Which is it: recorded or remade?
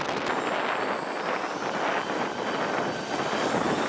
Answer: recorded